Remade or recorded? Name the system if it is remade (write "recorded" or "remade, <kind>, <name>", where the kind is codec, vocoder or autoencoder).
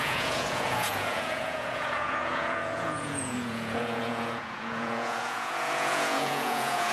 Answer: remade, vocoder, Vocos